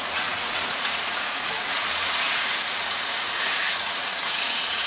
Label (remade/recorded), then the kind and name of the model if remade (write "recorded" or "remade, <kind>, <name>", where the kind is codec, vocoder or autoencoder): remade, vocoder, Vocos